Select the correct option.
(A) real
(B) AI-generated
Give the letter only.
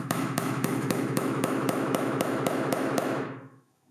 B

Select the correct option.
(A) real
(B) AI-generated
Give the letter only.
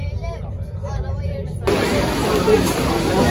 A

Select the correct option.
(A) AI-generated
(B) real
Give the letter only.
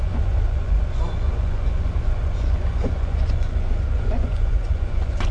A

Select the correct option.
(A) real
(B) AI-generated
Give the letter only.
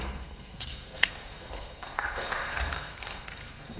B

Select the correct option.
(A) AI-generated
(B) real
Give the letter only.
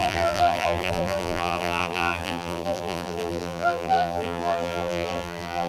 A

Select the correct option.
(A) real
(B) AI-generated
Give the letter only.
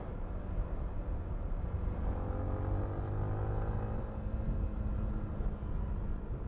A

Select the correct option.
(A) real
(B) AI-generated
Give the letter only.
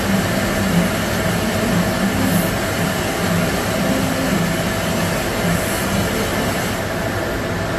A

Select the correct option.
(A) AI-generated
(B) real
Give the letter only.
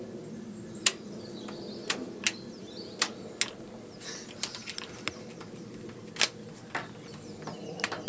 B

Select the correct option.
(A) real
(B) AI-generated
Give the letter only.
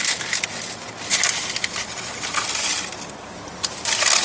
A